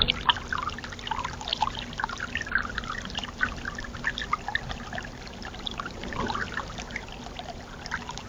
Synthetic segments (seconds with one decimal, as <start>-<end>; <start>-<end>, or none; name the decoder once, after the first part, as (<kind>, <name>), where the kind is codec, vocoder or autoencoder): none

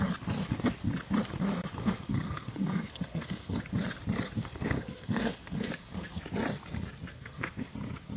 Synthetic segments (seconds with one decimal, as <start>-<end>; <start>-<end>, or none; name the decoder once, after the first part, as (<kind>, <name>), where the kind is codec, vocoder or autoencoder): 1.8-3.6 (codec, SNAC); 4.4-6.2; 7.1-7.7

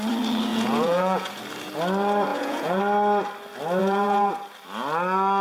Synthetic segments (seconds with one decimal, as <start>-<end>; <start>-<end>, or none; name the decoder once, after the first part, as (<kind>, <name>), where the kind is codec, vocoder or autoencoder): 0.5-1.3 (vocoder, Vocos); 2.3-2.8; 3.8-4.3

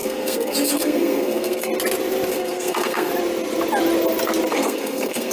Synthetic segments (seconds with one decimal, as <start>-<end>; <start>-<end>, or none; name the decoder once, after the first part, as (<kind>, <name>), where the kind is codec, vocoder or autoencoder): 0.0-1.7 (codec, SNAC); 2.3-3.1; 4.5-5.3

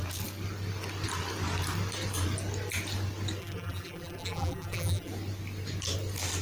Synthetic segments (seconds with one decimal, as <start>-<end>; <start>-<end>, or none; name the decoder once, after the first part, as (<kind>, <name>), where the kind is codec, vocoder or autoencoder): 3.4-5.1 (vocoder, BigVGAN v2)

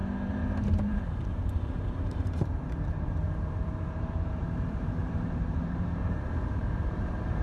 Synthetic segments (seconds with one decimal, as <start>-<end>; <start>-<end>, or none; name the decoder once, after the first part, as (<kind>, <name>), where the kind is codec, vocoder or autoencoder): 0.0-7.4 (vocoder, BigVGAN v2)